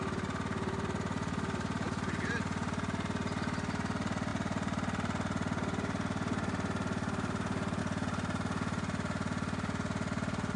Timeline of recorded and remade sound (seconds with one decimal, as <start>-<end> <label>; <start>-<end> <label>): 0.0-10.6 recorded